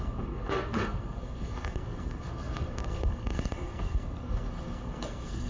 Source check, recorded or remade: remade